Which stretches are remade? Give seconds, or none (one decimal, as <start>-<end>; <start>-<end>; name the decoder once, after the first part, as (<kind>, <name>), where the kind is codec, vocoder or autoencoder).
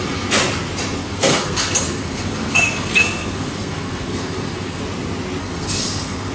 1.0-4.8 (codec, SNAC); 5.4-6.3